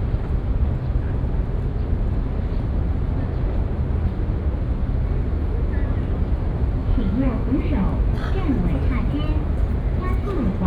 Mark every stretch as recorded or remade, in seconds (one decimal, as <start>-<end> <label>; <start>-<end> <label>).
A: 0.0-6.8 recorded; 6.8-8.0 remade; 8.0-10.7 recorded